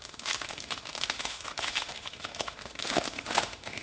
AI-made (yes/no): yes